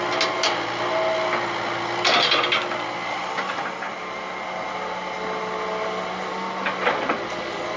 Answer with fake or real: real